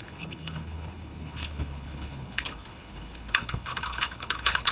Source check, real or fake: fake